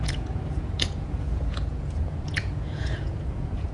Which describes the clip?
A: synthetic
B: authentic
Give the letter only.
A